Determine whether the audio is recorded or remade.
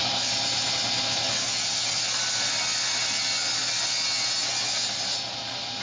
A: recorded